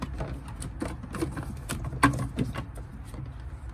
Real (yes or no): yes